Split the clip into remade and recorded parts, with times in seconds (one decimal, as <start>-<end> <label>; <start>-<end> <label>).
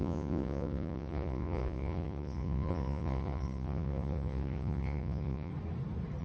0.0-5.5 remade; 5.5-6.2 recorded